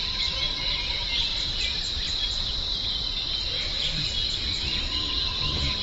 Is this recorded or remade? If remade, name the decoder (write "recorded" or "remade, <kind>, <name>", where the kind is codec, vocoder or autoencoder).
remade, vocoder, BigVGAN v2